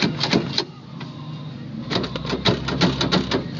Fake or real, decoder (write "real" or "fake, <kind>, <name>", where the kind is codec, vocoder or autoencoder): real